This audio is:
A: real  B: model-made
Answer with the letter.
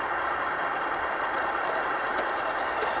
B